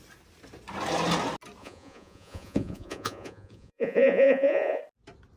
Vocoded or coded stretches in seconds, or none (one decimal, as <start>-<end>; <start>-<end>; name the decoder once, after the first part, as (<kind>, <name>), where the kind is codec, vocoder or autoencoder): 1.6-4.8 (vocoder, Vocos)